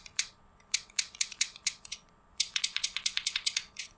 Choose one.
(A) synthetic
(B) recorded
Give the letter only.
A